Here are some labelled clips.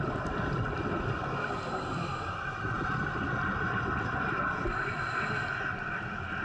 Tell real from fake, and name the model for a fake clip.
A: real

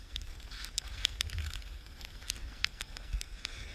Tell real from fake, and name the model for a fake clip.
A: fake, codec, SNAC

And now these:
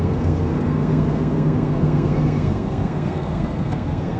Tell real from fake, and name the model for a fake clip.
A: fake, codec, SNAC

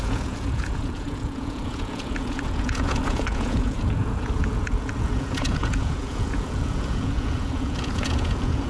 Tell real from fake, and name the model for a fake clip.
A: fake, vocoder, Vocos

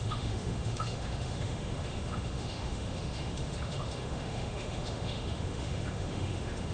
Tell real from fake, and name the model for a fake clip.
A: fake, autoencoder, DAC-VAE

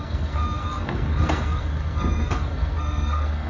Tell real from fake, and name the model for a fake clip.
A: fake, codec, SNAC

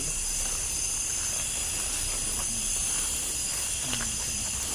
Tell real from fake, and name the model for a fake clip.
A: real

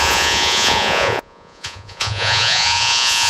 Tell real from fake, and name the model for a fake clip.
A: fake, vocoder, Vocos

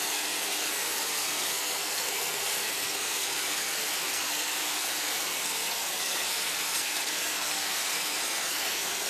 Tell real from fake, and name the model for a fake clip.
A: fake, codec, SNAC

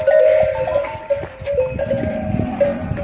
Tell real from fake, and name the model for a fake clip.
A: real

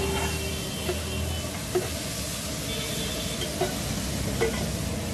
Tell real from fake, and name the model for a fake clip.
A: real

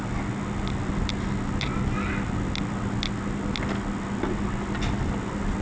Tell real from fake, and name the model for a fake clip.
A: real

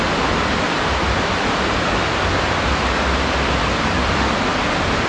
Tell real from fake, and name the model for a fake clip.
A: real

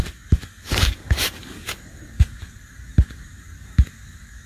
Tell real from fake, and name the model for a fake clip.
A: fake, codec, DAC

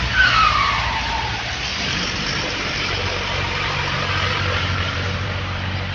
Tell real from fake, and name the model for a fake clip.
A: fake, vocoder, BigVGAN v2